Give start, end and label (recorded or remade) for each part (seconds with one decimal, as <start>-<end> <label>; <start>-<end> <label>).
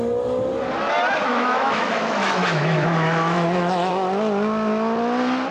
0.0-1.2 recorded; 1.2-3.9 remade; 3.9-5.5 recorded